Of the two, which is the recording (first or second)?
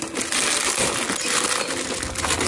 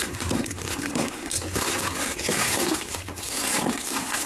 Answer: first